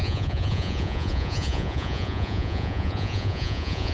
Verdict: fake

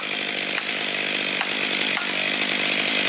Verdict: real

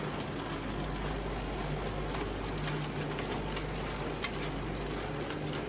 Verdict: real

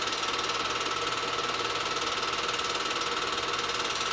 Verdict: real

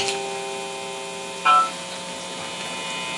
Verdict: real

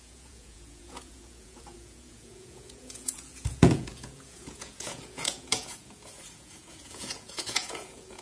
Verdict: fake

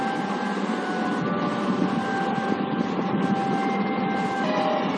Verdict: real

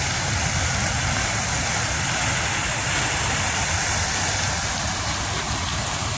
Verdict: real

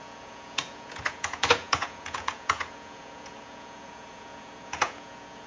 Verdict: fake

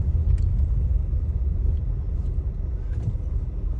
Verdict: real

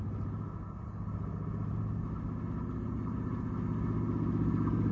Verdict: real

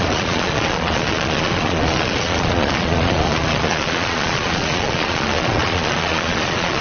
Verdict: fake